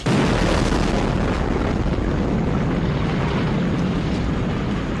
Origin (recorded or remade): recorded